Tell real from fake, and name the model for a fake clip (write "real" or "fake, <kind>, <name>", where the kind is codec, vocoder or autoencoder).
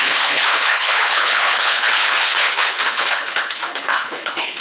fake, codec, HILCodec